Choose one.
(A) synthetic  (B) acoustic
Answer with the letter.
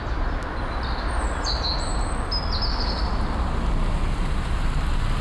B